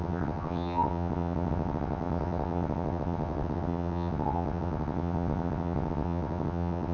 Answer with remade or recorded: remade